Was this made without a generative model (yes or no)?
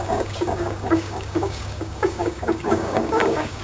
no